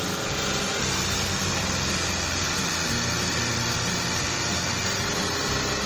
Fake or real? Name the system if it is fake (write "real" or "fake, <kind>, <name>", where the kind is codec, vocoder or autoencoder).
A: real